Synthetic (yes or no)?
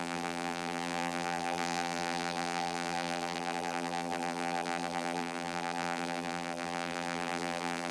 yes